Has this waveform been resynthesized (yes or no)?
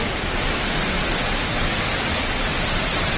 no